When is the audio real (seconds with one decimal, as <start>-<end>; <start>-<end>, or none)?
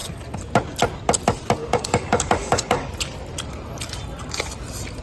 0.0-1.6; 2.9-5.0